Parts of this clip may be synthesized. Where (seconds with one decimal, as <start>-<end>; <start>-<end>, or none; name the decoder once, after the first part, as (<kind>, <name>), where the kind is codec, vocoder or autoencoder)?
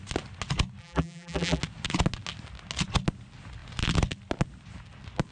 0.8-1.6 (vocoder, BigVGAN v2)